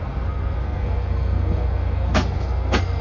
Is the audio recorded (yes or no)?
no